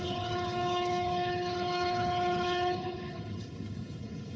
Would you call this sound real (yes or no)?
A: no